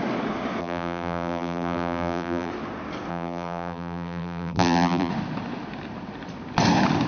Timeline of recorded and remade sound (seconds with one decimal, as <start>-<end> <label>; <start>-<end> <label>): 0.0-0.6 recorded; 0.6-2.5 remade; 2.5-3.1 recorded; 3.1-5.1 remade; 5.1-7.1 recorded